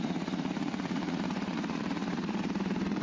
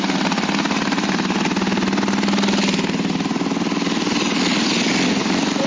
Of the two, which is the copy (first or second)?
first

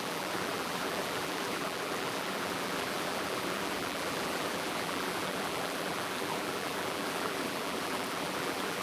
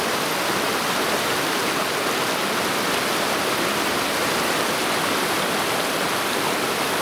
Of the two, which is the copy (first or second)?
first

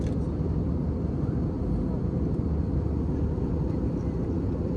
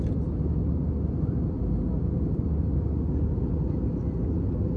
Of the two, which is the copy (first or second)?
first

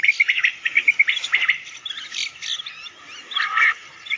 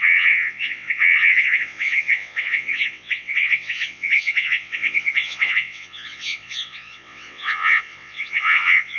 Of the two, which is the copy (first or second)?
second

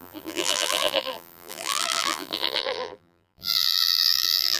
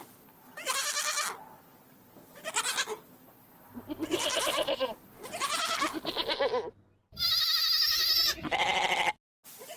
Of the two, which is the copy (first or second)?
first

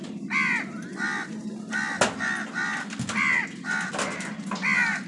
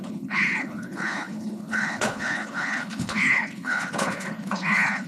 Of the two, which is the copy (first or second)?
second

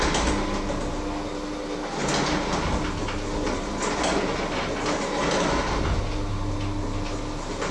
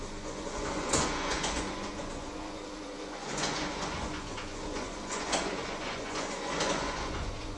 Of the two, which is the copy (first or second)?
second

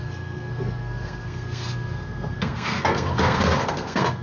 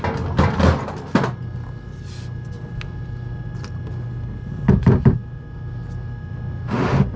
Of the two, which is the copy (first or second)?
first